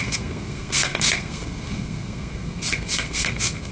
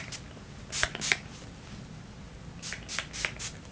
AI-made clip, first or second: first